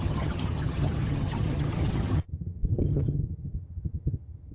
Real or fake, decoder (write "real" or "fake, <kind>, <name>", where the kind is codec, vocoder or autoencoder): fake, vocoder, HiFi-GAN